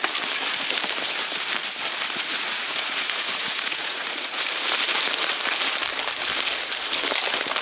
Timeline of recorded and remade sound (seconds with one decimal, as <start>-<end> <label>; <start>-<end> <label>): 0.0-2.3 recorded; 2.3-4.4 remade; 4.4-7.6 recorded